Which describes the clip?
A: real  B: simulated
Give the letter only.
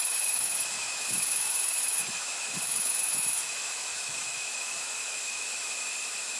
B